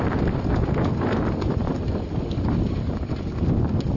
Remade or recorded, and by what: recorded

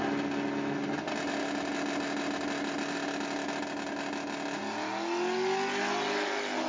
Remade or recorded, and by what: recorded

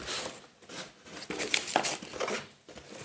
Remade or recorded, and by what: recorded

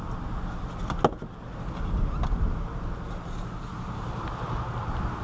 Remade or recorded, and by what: recorded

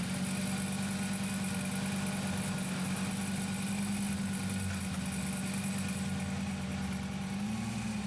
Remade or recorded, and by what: recorded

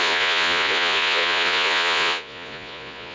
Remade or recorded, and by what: remade, vocoder, Vocos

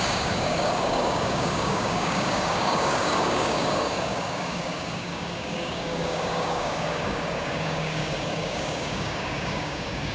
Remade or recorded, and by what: remade, codec, DAC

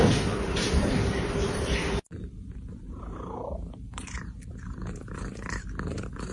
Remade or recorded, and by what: remade, vocoder, BigVGAN v2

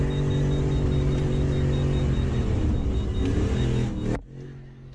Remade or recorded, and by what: recorded